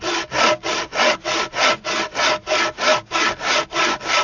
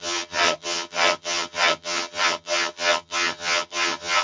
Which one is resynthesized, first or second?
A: second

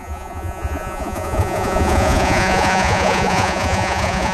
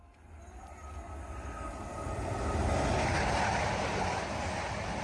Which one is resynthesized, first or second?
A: first